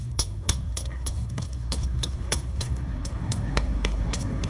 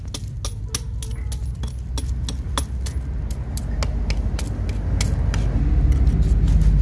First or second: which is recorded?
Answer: second